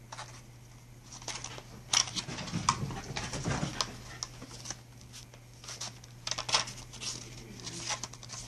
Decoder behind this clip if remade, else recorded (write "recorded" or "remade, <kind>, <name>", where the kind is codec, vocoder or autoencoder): recorded